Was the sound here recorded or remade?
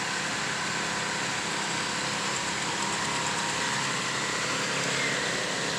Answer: recorded